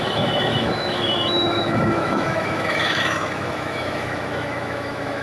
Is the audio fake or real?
fake